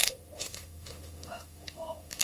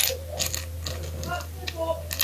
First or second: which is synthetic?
first